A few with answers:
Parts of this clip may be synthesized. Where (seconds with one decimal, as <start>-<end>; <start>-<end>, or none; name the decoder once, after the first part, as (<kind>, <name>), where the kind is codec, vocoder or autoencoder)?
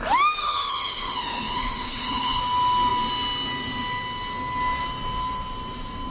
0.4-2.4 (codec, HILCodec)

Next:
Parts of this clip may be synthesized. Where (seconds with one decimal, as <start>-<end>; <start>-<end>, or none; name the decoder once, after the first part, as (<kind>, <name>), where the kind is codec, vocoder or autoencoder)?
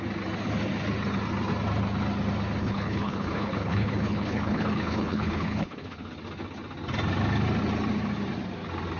2.6-6.1 (codec, HILCodec)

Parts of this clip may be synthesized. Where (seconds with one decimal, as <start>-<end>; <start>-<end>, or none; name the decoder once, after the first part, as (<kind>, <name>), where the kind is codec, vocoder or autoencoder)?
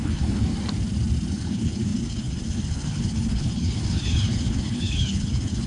0.0-0.5 (codec, HILCodec); 1.3-5.7